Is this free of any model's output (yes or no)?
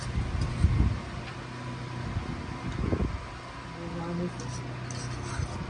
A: yes